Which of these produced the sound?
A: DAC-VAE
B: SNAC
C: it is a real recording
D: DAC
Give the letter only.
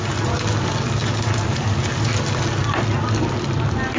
C